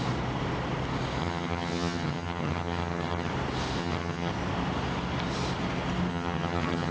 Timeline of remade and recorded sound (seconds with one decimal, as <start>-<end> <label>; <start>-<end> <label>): 0.0-1.2 recorded; 1.2-3.3 remade; 3.3-3.8 recorded; 3.8-4.3 remade; 4.3-6.1 recorded; 6.1-6.9 remade